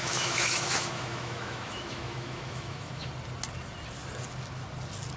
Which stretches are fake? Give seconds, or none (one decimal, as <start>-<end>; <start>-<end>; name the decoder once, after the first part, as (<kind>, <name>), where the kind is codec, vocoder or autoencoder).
0.0-3.1 (autoencoder, DAC-VAE)